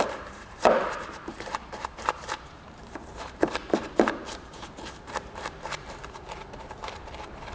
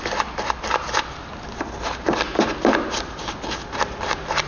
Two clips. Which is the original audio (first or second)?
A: second